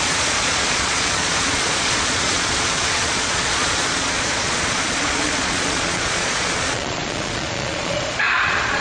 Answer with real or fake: fake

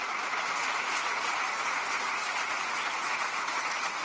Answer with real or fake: fake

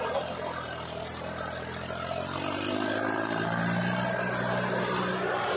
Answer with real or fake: real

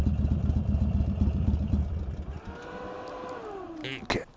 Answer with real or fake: real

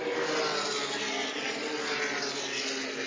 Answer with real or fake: real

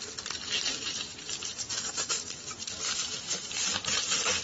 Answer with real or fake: fake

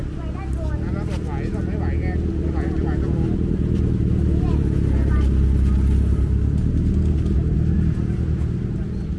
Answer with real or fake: real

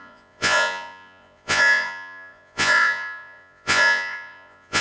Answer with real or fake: fake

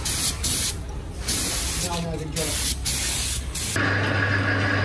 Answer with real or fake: real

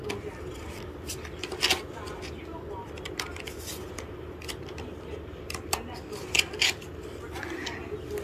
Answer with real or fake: real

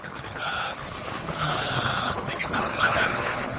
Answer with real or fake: fake